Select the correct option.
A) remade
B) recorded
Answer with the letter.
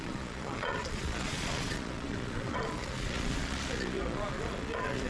A